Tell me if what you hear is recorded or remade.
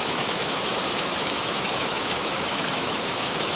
remade